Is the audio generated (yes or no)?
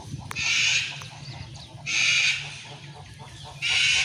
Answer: no